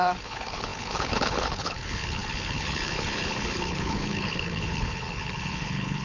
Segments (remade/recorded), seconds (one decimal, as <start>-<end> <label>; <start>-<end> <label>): 0.0-6.0 remade